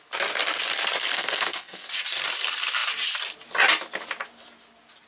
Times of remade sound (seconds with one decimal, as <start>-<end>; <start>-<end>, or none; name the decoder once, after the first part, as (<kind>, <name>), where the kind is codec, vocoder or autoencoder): 1.1-1.9 (codec, SNAC)